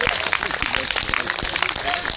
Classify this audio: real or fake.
real